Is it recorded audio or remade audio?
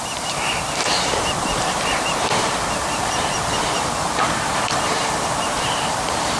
remade